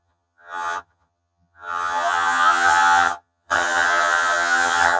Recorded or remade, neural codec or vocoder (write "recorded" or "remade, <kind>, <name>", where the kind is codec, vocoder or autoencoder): remade, vocoder, HiFi-GAN